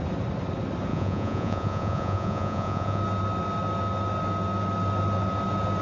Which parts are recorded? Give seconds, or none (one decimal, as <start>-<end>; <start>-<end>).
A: 0.0-0.9; 3.0-5.8